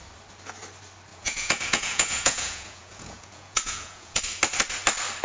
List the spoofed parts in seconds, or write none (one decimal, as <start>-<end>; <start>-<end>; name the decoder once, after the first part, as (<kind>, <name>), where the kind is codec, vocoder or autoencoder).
1.1-4.2 (vocoder, Vocos)